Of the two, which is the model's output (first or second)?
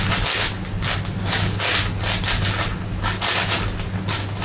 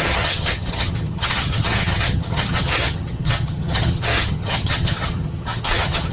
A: second